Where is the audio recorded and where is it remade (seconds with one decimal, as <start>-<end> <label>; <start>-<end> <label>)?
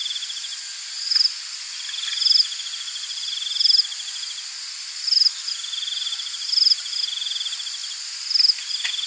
0.0-9.1 recorded